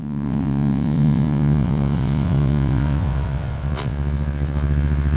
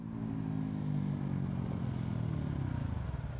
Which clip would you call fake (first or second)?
first